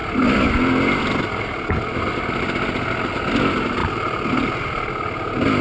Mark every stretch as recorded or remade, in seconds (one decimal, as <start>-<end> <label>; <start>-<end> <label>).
0.0-5.6 recorded